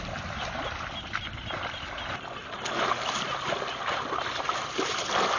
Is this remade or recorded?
recorded